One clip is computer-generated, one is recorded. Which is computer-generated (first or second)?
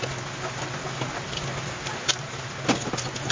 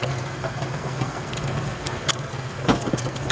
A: second